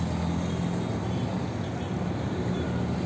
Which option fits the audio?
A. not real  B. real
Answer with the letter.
B